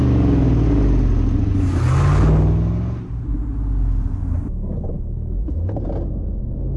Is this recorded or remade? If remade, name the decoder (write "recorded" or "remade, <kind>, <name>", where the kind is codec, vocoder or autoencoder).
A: recorded